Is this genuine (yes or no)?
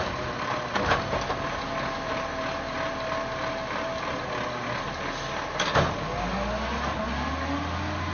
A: yes